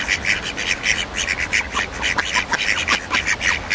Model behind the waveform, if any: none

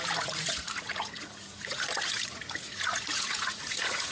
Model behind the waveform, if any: vocoder, Vocos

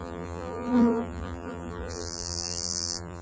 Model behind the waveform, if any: vocoder, BigVGAN v2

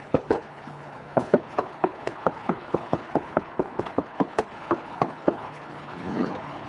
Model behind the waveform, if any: codec, HILCodec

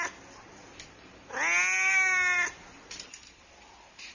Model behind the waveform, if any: none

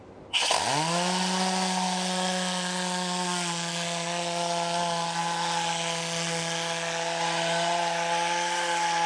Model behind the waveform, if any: none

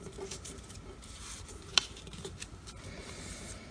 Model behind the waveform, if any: none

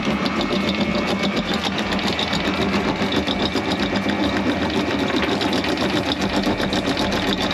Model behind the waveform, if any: none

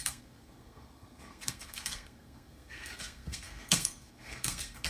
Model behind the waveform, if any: codec, SNAC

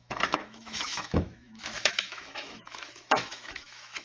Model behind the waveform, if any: autoencoder, DAC-VAE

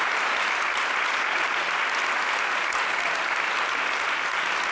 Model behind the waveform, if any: none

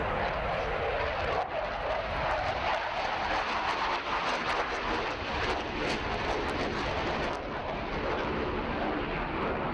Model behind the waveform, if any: none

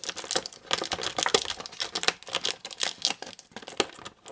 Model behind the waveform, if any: none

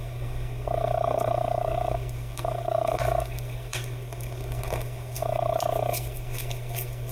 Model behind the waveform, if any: codec, SNAC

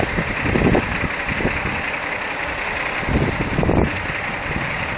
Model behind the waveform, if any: none